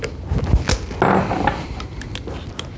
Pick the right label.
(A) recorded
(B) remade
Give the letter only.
A